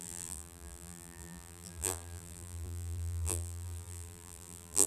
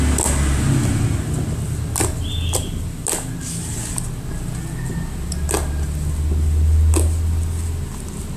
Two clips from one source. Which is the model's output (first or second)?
first